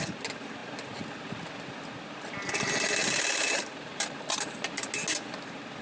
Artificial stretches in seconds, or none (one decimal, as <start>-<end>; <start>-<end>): 3.0-4.4